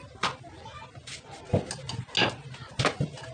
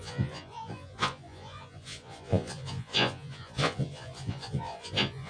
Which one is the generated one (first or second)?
second